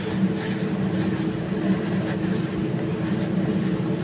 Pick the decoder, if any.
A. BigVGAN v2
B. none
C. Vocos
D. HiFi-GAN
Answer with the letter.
B